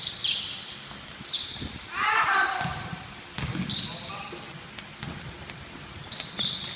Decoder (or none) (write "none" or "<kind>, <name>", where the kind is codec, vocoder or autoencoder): none